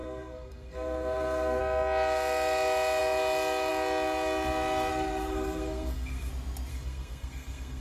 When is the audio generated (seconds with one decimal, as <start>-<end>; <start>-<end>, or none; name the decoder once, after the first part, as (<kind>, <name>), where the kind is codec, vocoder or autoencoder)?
0.0-1.6 (codec, SNAC); 4.9-6.3; 6.7-7.8